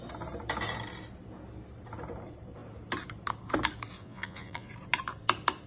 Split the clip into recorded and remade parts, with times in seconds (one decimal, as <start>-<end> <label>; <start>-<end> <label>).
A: 0.0-4.0 recorded; 4.0-4.7 remade; 4.7-5.7 recorded